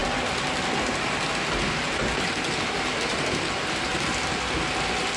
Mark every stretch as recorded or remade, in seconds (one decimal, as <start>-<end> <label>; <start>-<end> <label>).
0.0-3.9 recorded; 3.9-4.6 remade; 4.6-5.2 recorded